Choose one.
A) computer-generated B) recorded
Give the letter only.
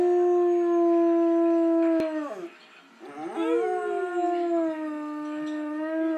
B